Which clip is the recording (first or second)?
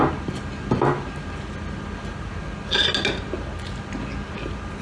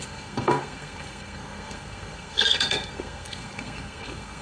first